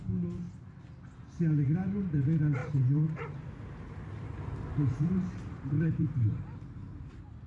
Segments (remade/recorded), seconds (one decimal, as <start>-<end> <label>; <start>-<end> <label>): 0.0-2.6 recorded; 2.6-7.1 remade; 7.1-7.5 recorded